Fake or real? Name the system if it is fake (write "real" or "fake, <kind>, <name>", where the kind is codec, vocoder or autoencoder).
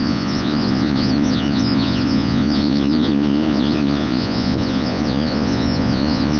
fake, vocoder, Vocos